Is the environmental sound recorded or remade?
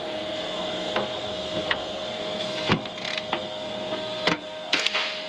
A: remade